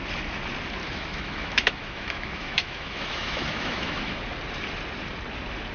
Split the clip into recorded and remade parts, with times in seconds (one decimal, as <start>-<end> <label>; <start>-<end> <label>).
0.0-0.8 recorded; 0.8-4.2 remade; 4.2-5.7 recorded